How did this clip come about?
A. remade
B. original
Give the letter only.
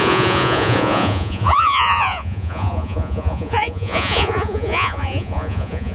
A